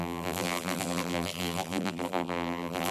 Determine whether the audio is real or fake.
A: fake